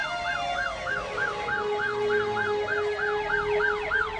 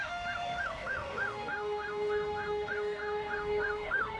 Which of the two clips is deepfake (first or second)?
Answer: second